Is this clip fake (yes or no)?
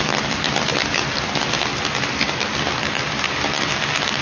no